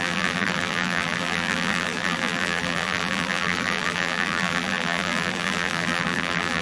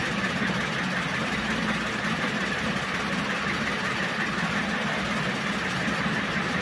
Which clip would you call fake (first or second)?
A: first